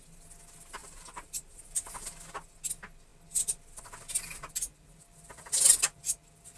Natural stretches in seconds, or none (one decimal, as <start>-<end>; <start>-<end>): 0.0-0.8; 2.0-6.6